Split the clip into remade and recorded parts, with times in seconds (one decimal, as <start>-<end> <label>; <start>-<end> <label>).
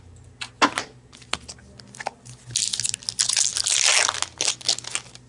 0.0-5.3 recorded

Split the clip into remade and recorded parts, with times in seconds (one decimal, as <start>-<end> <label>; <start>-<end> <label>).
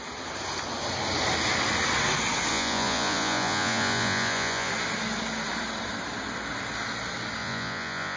0.0-2.5 recorded; 2.5-4.7 remade; 4.7-7.4 recorded; 7.4-8.2 remade